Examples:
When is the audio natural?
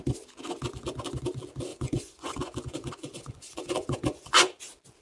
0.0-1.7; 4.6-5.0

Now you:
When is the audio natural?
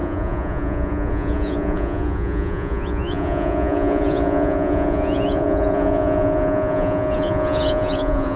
none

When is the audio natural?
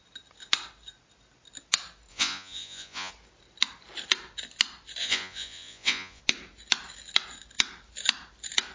0.0-2.1; 3.1-5.0; 6.2-8.7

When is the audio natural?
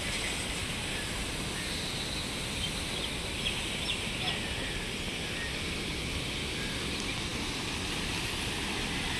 0.0-9.2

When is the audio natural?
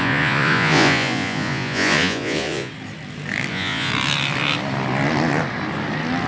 2.7-3.5; 3.9-6.3